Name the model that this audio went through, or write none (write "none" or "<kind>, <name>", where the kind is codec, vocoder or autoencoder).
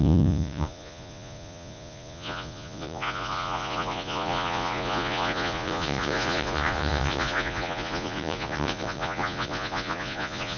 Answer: vocoder, Vocos